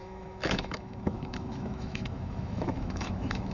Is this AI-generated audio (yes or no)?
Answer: yes